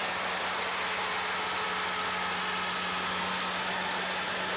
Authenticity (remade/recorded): recorded